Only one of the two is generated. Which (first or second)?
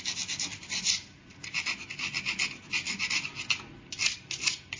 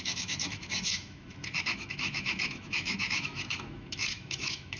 second